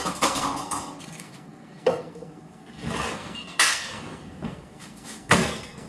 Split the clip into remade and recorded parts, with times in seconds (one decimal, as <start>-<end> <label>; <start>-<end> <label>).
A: 0.0-5.9 remade